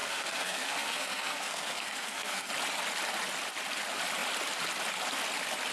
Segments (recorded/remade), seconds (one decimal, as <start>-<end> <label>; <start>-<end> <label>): 0.0-2.5 remade; 2.5-5.7 recorded